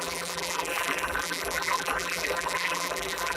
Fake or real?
fake